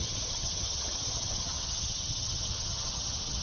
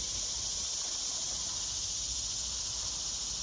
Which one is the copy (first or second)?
first